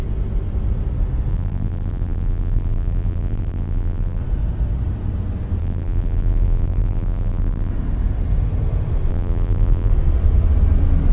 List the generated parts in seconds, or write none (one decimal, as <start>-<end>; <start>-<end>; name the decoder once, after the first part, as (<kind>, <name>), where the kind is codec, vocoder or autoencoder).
1.3-4.2 (vocoder, BigVGAN v2); 5.6-7.7; 9.1-9.9